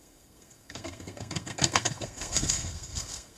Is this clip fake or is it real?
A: fake